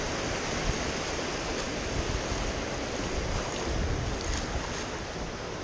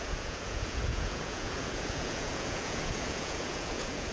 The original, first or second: first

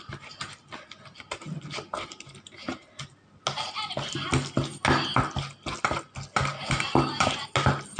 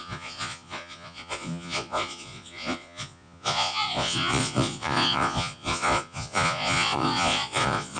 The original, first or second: first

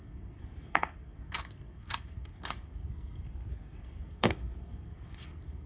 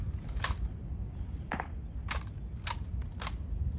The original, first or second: second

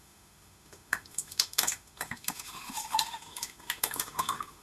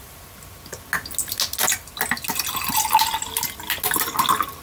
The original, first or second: second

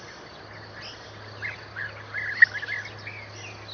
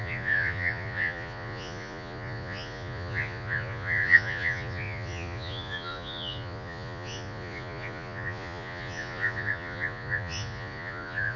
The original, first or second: first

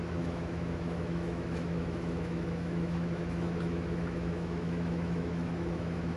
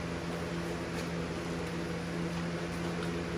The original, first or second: second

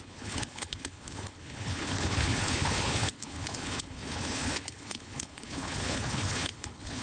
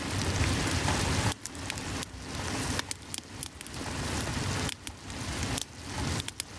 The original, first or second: second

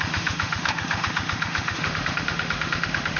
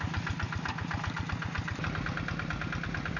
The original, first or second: second